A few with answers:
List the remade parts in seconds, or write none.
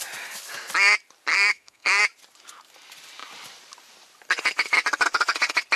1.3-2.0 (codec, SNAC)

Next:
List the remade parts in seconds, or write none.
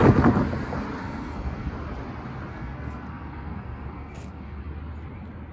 1.0-1.7 (codec, SNAC); 2.5-4.6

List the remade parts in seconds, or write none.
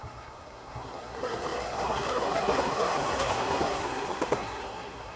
0.0-5.2 (codec, SNAC)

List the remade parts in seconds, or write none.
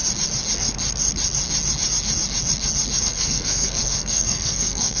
3.0-5.0 (codec, SNAC)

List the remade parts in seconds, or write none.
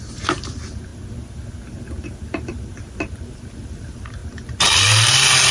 0.0-0.9 (vocoder, BigVGAN v2); 2.7-4.2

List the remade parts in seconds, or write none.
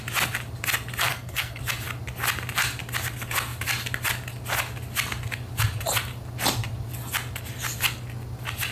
1.1-1.6 (codec, SNAC)